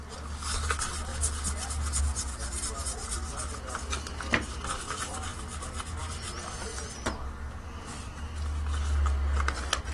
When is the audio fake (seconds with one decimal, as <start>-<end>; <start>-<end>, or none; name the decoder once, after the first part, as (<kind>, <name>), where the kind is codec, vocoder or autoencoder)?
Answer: none